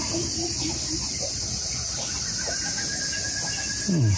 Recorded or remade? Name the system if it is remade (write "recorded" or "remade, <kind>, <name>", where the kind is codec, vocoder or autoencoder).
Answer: recorded